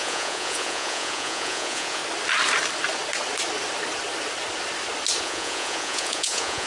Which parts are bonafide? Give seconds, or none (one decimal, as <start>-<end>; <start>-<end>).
2.0-5.2